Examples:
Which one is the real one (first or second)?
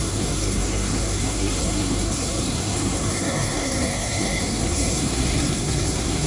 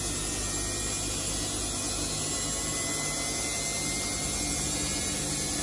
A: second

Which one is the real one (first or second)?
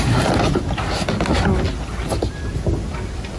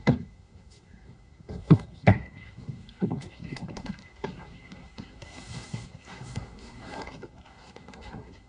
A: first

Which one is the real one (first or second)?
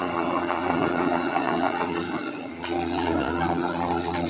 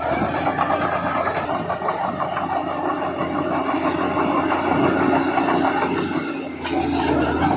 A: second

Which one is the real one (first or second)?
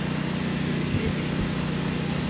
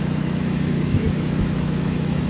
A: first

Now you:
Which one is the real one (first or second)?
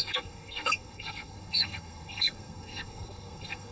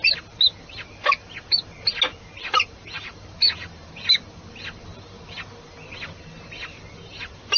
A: second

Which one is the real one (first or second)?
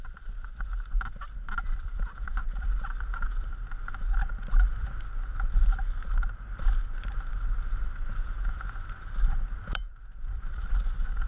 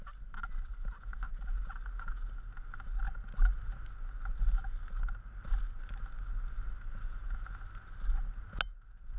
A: second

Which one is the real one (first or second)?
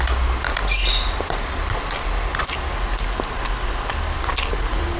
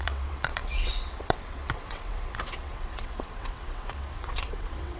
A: first